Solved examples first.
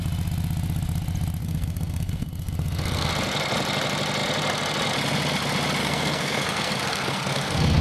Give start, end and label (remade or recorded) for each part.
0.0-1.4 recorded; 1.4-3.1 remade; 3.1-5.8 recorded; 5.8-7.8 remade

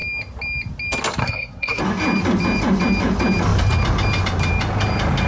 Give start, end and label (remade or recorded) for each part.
0.0-1.2 recorded; 1.2-1.8 remade; 1.8-5.3 recorded

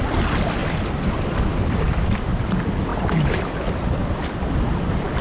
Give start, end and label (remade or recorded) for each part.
0.0-5.2 recorded

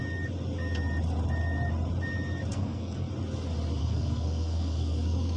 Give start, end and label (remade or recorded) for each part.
0.0-2.5 recorded; 2.5-3.1 remade; 3.1-3.8 recorded; 3.8-5.4 remade

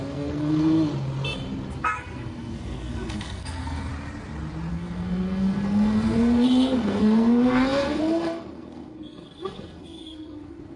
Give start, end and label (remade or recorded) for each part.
0.0-0.9 remade; 0.9-1.8 recorded; 1.8-3.9 remade; 3.9-4.7 recorded; 4.7-10.8 remade

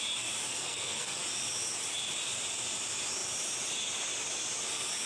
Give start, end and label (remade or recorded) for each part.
0.0-0.5 recorded; 0.5-1.2 remade; 1.2-5.1 recorded

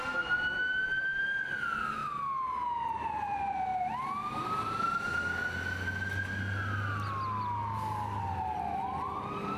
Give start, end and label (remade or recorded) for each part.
0.0-9.6 recorded

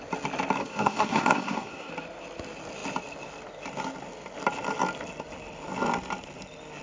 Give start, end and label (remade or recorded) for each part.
0.0-0.6 recorded; 0.6-1.9 remade; 1.9-6.8 recorded